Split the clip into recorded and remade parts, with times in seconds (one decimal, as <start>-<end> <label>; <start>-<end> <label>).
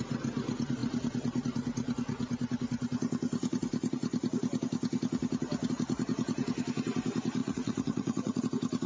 0.0-7.4 recorded; 7.4-8.4 remade; 8.4-8.9 recorded